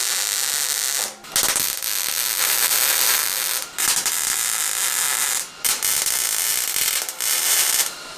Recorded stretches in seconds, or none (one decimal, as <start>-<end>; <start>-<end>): 0.0-2.4; 3.2-7.3

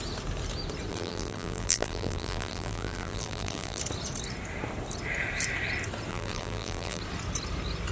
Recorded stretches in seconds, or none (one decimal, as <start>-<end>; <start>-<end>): 0.0-0.9; 3.8-6.1; 7.0-7.9

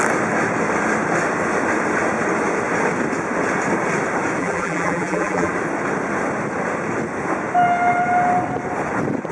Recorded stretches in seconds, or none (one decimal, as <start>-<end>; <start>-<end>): 0.0-4.4; 5.5-9.3

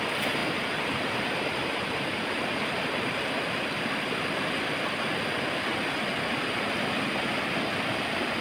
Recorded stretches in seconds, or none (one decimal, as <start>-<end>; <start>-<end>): 0.0-0.4; 3.1-8.4

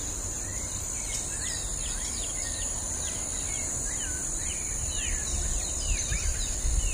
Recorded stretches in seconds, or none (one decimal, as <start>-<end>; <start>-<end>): 0.0-6.9